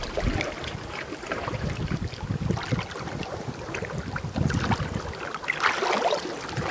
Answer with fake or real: real